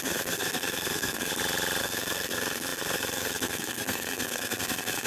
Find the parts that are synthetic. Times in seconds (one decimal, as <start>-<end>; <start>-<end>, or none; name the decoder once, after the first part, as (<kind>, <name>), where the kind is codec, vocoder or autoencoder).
0.0-1.3 (codec, SNAC); 1.8-5.1